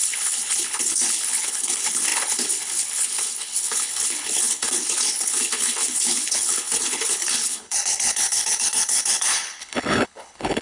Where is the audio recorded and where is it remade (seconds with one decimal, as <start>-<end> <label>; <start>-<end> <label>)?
0.0-10.6 remade